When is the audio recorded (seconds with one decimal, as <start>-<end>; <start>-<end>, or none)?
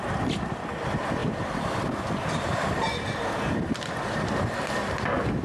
0.0-1.2; 4.4-5.4